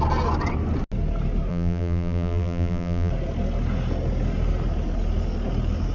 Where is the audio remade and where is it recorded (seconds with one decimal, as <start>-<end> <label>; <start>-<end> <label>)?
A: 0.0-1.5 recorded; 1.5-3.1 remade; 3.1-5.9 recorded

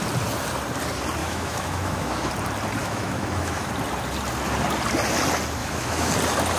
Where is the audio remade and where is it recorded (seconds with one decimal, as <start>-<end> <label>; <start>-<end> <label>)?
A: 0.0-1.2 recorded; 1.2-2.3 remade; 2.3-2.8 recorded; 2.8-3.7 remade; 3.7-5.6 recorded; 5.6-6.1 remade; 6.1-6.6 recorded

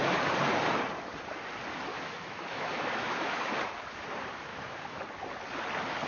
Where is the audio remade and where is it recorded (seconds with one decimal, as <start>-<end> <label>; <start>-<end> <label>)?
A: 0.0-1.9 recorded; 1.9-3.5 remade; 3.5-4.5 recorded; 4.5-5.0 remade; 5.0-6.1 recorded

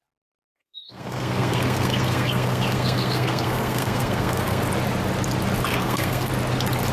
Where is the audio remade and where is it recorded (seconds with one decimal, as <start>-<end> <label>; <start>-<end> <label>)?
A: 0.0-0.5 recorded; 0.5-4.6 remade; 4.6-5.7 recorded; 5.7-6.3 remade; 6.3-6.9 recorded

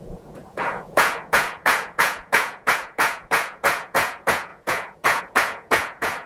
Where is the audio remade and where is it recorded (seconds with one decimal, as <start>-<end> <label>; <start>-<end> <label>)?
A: 0.0-6.3 remade